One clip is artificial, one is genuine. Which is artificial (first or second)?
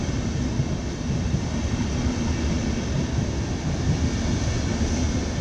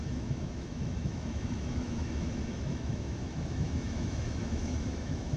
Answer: second